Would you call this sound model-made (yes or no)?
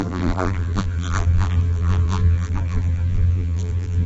yes